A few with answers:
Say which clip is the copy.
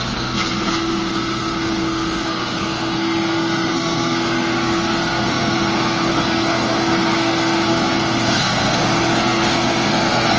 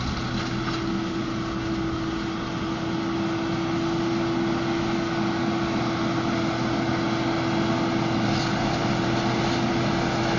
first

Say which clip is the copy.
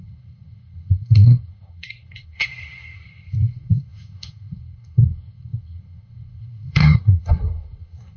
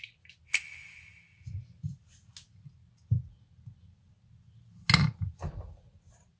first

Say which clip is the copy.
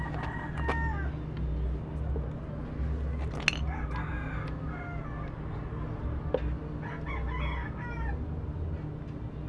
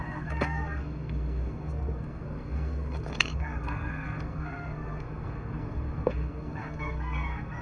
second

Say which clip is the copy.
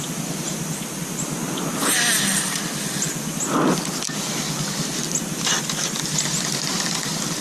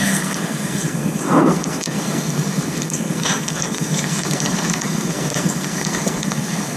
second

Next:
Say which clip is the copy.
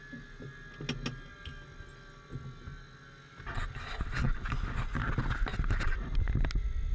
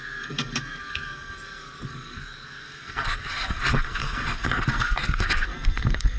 second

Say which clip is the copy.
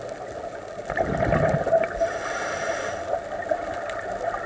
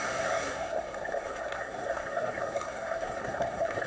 second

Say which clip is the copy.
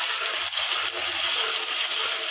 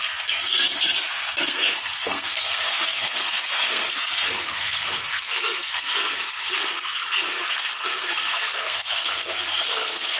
second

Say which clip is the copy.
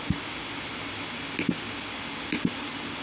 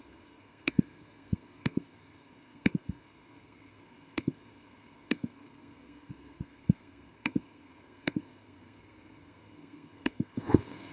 second